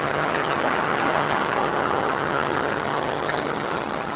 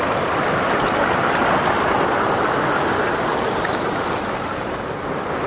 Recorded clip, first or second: second